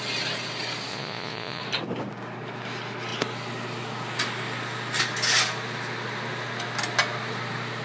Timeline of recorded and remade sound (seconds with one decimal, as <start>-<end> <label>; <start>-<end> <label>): 0.0-0.9 recorded; 0.9-1.6 remade; 1.6-7.8 recorded